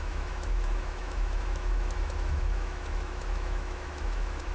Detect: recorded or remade remade